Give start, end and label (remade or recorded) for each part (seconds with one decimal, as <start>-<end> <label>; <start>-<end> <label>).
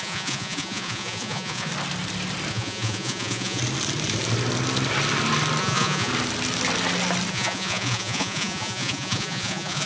0.0-1.7 remade; 1.7-2.5 recorded; 2.5-3.6 remade; 3.6-5.6 recorded; 5.6-6.1 remade; 6.1-7.3 recorded; 7.3-9.9 remade